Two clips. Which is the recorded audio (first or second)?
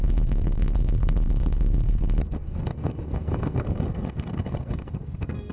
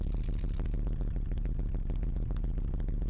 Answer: second